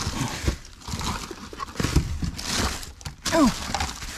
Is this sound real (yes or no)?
yes